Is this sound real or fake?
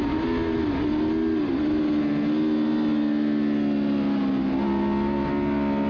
real